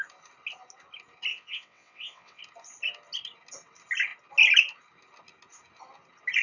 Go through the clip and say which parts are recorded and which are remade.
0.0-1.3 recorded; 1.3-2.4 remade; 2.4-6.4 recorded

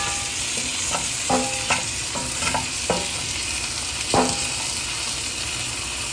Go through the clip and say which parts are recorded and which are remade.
0.0-6.1 recorded

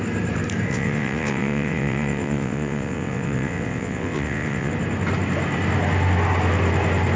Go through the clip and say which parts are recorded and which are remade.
0.0-0.7 recorded; 0.7-4.7 remade; 4.7-7.2 recorded